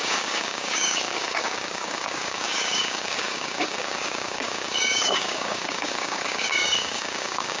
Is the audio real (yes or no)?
no